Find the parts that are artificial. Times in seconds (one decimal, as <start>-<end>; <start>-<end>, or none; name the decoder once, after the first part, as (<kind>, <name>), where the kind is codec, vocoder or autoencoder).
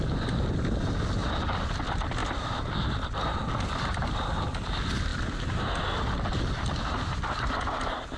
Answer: 1.2-1.8 (vocoder, BigVGAN v2); 5.1-5.7